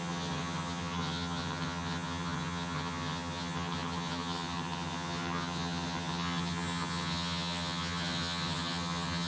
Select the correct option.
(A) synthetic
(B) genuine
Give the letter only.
A